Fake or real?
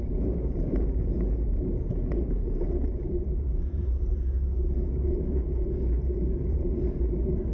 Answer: fake